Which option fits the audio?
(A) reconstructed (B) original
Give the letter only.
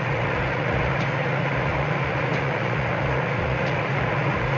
A